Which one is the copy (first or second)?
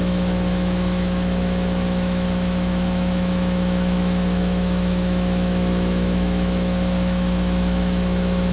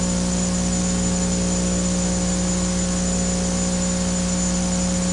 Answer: first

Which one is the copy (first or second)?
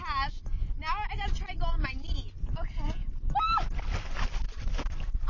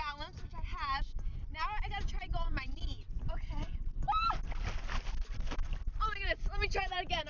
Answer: second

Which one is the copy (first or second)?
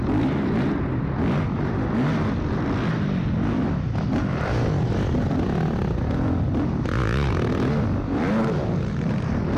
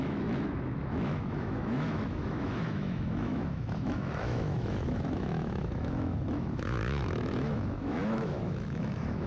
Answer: second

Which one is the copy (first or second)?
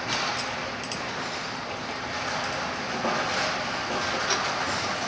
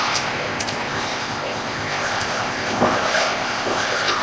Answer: second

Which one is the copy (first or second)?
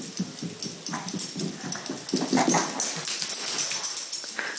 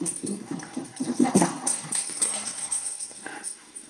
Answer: second